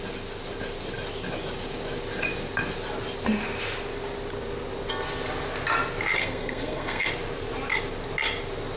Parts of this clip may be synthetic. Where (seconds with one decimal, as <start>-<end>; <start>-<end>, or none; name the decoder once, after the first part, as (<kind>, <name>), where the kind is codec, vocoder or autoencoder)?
6.2-7.1 (codec, SNAC)